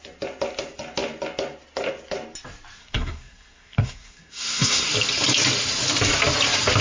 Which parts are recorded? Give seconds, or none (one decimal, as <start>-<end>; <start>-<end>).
0.0-2.8; 4.9-6.8